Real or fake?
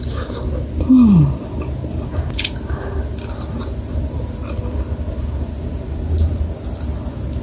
real